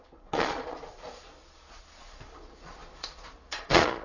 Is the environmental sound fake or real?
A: fake